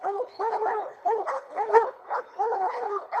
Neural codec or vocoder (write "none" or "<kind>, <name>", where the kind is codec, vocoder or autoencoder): codec, HILCodec